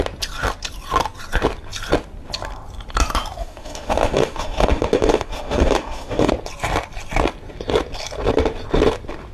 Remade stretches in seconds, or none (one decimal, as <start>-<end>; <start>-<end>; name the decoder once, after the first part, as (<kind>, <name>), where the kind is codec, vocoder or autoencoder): 3.4-6.3 (autoencoder, DAC-VAE)